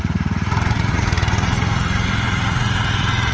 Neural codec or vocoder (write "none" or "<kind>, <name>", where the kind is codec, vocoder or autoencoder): vocoder, Vocos